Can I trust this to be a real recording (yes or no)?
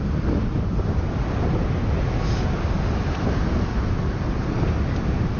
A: yes